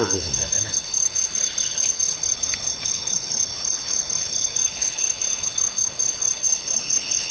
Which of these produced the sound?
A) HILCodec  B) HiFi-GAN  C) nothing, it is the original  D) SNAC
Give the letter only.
A